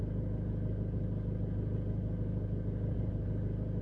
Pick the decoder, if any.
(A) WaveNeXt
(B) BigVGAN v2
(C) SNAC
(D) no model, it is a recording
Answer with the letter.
D